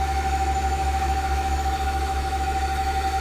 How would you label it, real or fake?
fake